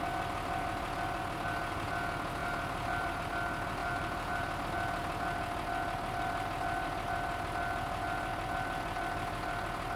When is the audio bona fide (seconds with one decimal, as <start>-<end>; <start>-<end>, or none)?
0.0-2.4; 3.1-3.8; 4.7-10.0